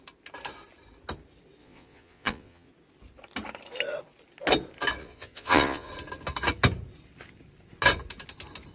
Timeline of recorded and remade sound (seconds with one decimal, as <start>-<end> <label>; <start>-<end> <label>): 0.0-1.6 recorded; 1.6-2.7 remade; 2.7-5.0 recorded; 5.0-5.9 remade; 5.9-8.7 recorded